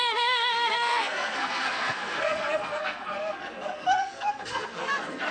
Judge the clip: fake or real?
fake